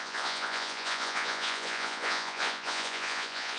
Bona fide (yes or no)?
no